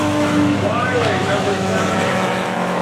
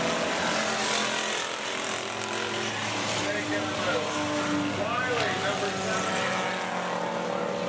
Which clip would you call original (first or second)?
second